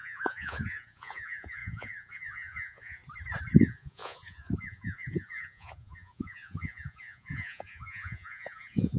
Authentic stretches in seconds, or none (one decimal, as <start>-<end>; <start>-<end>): 3.0-3.6